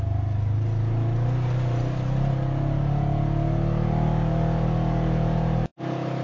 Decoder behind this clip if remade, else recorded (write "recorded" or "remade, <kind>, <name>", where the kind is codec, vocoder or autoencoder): recorded